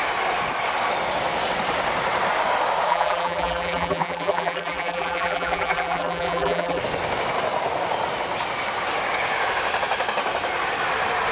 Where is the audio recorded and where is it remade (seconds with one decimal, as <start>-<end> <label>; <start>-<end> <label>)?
0.0-2.9 recorded; 2.9-6.8 remade; 6.8-11.3 recorded